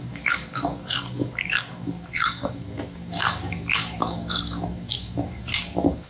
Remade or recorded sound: remade